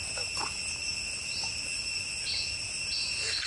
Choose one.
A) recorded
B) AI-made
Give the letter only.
A